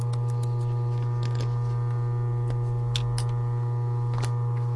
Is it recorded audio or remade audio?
recorded